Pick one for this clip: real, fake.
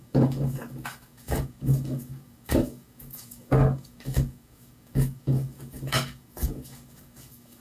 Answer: fake